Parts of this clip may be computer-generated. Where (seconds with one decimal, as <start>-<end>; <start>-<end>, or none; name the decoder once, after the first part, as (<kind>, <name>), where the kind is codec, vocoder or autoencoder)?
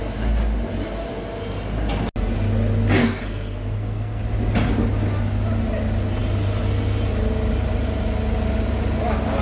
3.0-4.2 (codec, SNAC)